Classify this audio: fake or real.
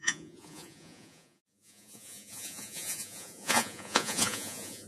fake